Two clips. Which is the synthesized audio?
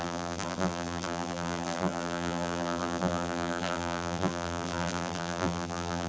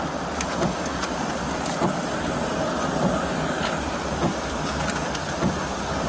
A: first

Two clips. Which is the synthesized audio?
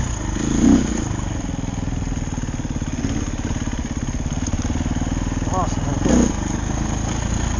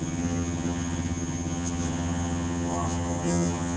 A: second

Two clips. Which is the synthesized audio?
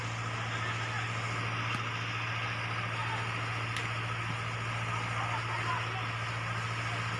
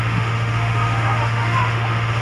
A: second